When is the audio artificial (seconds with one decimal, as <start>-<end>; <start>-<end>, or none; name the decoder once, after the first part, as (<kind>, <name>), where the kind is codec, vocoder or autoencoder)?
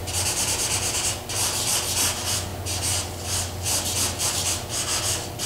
none